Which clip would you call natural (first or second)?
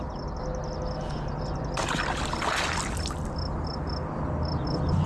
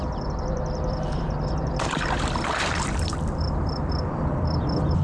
first